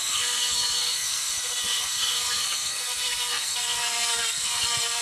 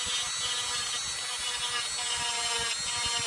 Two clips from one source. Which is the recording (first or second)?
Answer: second